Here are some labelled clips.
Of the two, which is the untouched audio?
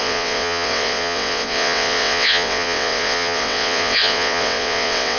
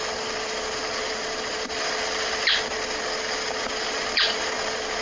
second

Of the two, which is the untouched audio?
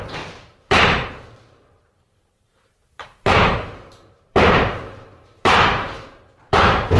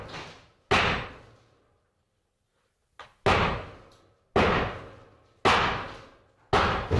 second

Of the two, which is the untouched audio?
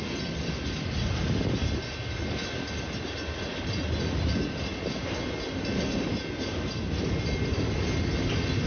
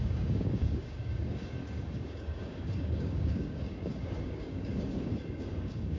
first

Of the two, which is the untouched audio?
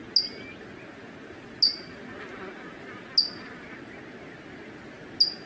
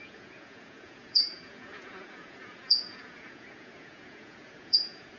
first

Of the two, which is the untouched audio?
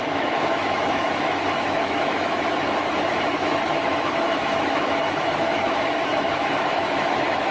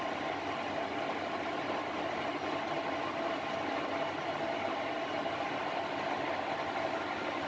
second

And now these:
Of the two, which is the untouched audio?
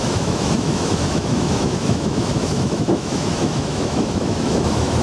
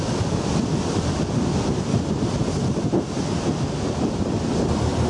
second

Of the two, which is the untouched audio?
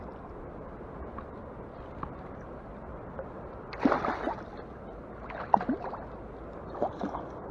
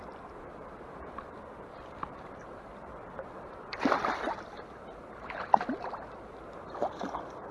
first